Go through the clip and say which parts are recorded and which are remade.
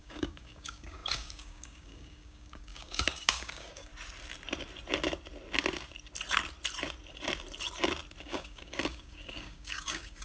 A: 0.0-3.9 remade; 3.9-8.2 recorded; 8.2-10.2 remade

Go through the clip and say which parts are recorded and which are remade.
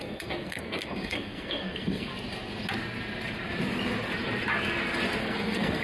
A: 0.0-2.1 remade; 2.1-5.2 recorded; 5.2-5.8 remade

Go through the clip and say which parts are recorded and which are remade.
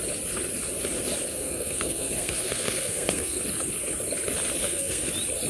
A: 0.0-1.3 recorded; 1.3-3.4 remade; 3.4-4.6 recorded; 4.6-5.1 remade; 5.1-5.5 recorded